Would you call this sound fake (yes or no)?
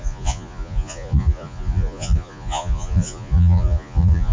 yes